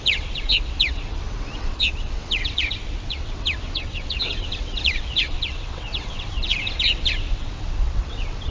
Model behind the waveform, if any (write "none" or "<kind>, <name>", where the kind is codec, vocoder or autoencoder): vocoder, WaveNeXt